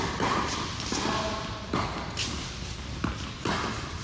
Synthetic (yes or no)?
no